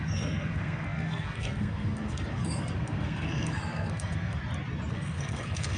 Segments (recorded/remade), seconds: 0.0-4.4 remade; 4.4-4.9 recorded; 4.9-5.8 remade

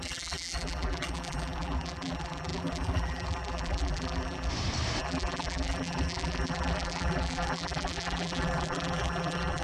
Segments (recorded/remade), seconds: 0.0-4.5 remade; 4.5-5.0 recorded; 5.0-9.6 remade

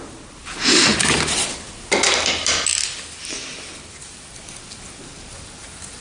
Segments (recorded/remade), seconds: 0.0-6.0 recorded

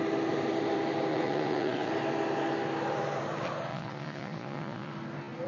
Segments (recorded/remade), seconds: 0.0-1.1 recorded; 1.1-1.9 remade; 1.9-3.7 recorded; 3.7-4.9 remade; 4.9-5.5 recorded

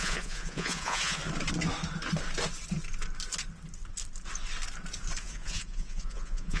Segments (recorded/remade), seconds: 0.0-1.2 remade; 1.2-5.2 recorded; 5.2-6.6 remade

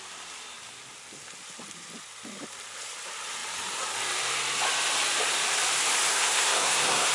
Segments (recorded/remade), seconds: 0.0-6.1 recorded; 6.1-7.1 remade

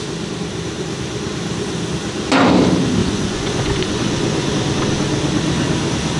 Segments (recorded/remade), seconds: 0.0-3.0 recorded; 3.0-4.5 remade; 4.5-6.2 recorded

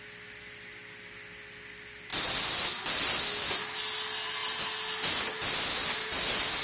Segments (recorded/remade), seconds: 0.0-6.6 recorded